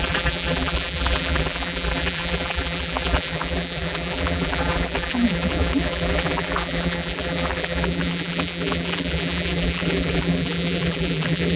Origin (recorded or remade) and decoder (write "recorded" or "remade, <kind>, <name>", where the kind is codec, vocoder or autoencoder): remade, vocoder, BigVGAN v2